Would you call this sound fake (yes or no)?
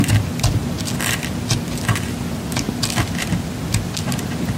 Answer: no